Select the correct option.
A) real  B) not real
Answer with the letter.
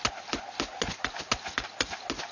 A